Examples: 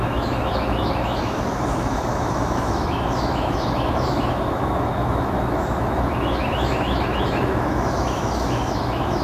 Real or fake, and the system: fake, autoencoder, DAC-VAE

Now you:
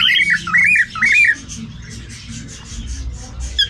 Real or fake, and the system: real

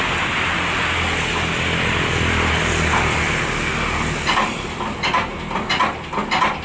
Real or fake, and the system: real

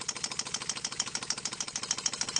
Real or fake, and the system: real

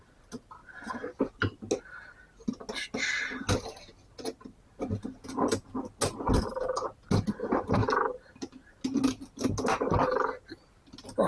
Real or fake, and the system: real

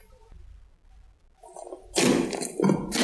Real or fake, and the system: real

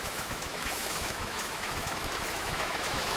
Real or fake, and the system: fake, autoencoder, DAC-VAE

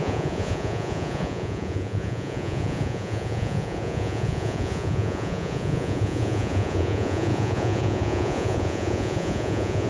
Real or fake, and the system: fake, vocoder, Vocos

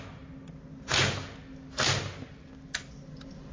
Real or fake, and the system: real